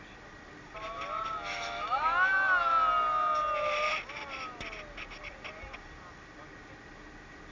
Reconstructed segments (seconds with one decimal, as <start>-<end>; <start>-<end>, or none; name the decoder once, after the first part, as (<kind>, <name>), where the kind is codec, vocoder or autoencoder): none